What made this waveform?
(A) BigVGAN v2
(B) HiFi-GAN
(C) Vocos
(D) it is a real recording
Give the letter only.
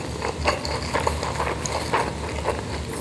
D